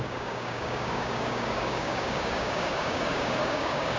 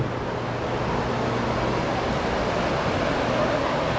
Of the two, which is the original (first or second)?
second